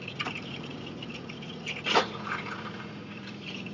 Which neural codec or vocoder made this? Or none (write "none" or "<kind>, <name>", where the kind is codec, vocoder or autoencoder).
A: vocoder, Vocos